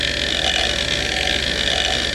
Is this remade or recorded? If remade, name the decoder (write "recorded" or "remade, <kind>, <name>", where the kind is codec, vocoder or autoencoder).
recorded